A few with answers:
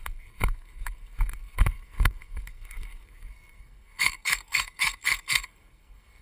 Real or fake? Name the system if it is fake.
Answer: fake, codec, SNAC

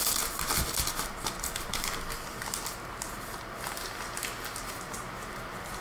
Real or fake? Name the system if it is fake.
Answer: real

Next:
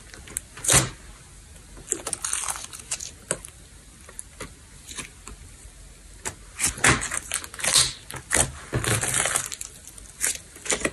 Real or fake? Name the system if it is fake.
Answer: real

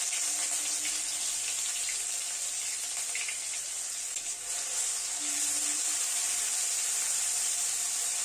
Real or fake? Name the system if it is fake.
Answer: real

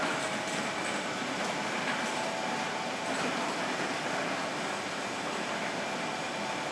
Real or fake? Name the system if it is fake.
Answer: real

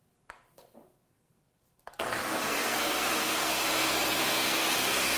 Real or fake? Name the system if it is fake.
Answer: fake, codec, SNAC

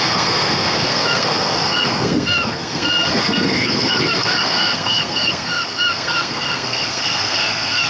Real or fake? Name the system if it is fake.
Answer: fake, codec, SNAC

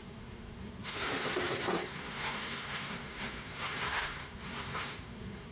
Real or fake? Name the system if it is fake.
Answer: fake, codec, SNAC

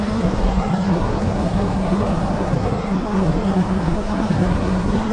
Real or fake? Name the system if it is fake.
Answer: fake, codec, SNAC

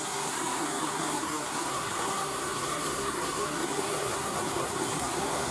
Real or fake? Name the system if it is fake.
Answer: fake, codec, SNAC